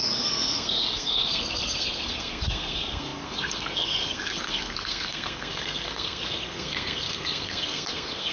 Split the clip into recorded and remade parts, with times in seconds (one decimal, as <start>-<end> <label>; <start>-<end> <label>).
0.0-8.3 remade